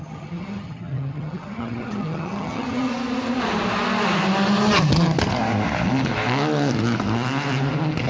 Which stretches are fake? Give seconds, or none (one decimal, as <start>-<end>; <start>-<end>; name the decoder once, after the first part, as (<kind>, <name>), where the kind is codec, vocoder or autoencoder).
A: 0.0-2.9 (vocoder, HiFi-GAN)